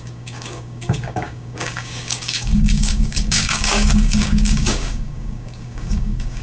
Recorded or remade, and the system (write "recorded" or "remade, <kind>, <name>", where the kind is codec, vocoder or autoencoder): remade, codec, DAC